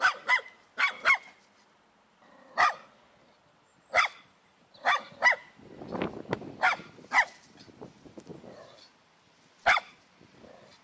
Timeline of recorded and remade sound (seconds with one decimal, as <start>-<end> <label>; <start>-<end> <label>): 0.0-10.8 recorded